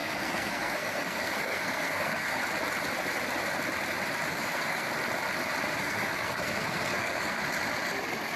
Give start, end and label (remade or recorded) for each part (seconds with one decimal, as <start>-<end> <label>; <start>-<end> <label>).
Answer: 0.0-2.4 remade; 2.4-4.3 recorded; 4.3-4.9 remade; 4.9-5.7 recorded; 5.7-7.4 remade; 7.4-8.4 recorded